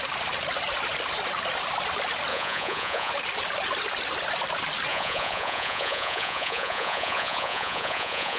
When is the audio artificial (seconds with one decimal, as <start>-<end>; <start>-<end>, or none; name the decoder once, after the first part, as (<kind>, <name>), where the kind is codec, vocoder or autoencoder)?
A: 2.3-3.1 (vocoder, Vocos); 4.9-8.4